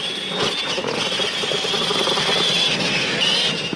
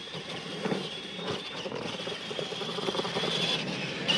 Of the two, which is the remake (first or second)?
second